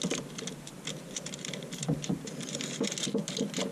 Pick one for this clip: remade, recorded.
recorded